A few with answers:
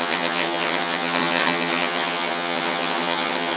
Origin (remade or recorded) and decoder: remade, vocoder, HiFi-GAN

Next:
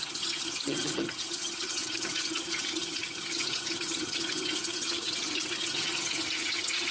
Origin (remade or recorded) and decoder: remade, vocoder, HiFi-GAN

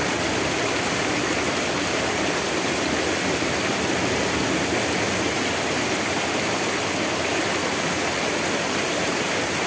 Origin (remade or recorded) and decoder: recorded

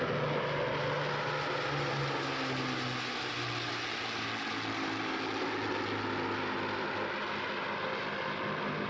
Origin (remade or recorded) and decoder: recorded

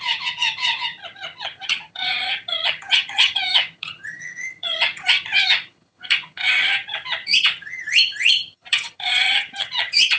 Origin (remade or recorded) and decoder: remade, vocoder, HiFi-GAN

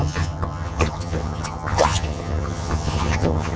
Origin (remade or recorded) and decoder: remade, vocoder, HiFi-GAN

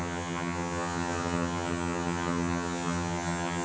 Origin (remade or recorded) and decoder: remade, vocoder, HiFi-GAN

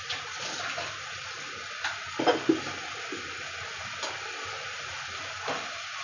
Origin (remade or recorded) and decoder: recorded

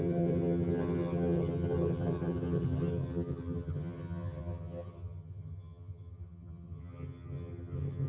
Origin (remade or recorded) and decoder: remade, vocoder, HiFi-GAN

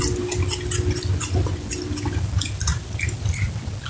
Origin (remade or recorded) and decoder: recorded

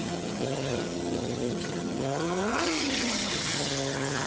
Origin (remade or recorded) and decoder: remade, vocoder, HiFi-GAN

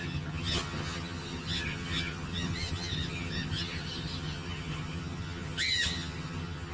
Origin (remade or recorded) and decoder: remade, vocoder, HiFi-GAN